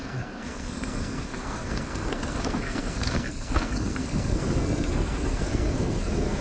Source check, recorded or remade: remade